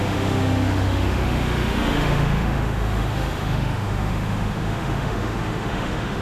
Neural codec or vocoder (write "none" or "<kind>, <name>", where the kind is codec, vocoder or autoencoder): autoencoder, DAC-VAE